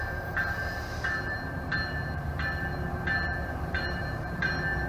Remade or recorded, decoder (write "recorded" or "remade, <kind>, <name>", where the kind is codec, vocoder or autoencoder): remade, vocoder, BigVGAN v2